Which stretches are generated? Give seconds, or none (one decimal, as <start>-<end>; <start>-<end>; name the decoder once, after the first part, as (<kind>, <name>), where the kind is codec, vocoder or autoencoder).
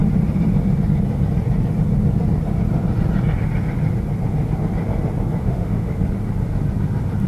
5.4-5.9 (autoencoder, DAC-VAE)